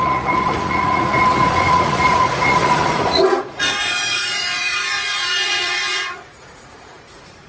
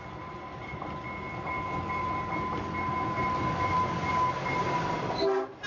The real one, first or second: second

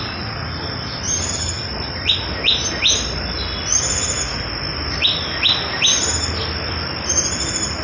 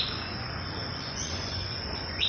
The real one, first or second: first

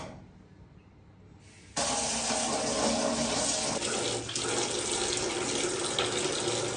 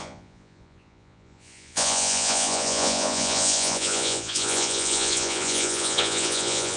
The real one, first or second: first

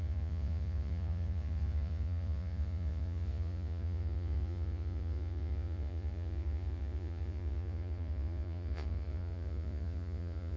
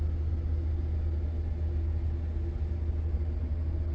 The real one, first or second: second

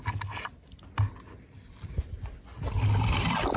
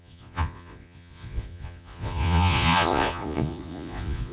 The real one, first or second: first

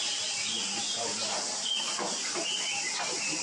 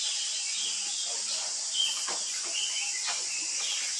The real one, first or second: first